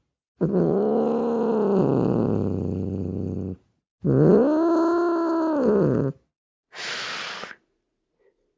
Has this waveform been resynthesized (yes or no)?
no